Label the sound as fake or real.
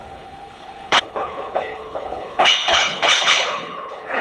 fake